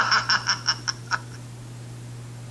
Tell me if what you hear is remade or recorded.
recorded